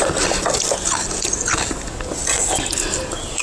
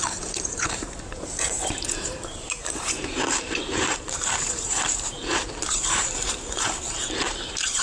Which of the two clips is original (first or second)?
first